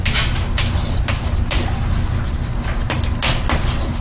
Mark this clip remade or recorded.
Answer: recorded